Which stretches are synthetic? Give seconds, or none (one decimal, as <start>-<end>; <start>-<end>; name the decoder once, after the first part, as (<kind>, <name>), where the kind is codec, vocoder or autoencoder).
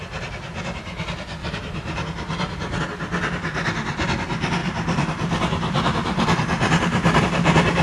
1.4-2.8 (vocoder, BigVGAN v2); 4.6-7.2